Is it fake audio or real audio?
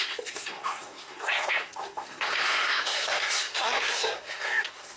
fake